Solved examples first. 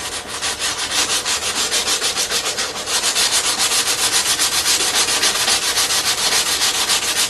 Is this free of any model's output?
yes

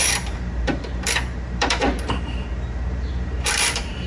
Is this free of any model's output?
no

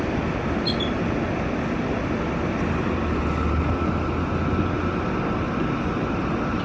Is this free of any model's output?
yes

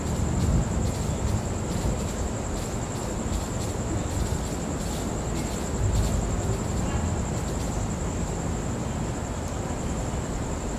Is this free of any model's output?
yes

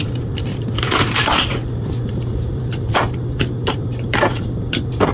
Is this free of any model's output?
no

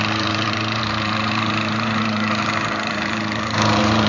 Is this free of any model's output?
no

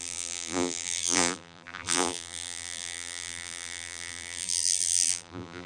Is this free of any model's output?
no